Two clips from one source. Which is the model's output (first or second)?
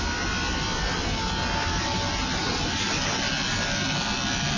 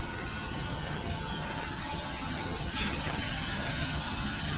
second